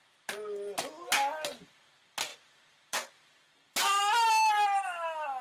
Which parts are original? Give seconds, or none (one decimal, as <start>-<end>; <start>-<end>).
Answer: 0.0-2.3; 4.1-5.4